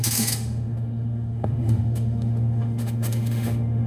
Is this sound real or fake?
fake